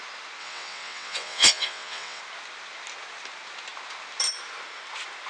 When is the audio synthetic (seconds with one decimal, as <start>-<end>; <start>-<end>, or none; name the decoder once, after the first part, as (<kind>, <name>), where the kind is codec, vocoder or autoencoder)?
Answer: 0.4-2.2 (vocoder, WaveNeXt)